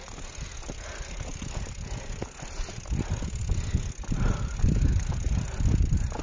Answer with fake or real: real